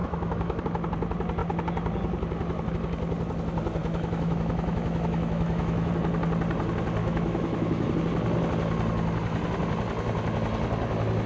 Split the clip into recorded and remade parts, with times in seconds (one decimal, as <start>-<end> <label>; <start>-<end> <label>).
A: 0.0-0.6 remade; 0.6-3.8 recorded; 3.8-5.9 remade; 5.9-7.0 recorded; 7.0-7.9 remade; 7.9-11.3 recorded